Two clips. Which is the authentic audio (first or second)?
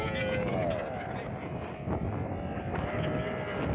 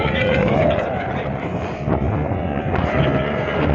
first